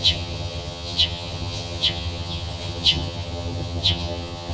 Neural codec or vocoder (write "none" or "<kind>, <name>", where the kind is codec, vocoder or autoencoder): vocoder, HiFi-GAN